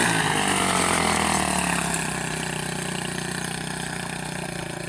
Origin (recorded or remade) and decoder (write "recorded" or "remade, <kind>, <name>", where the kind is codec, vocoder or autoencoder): recorded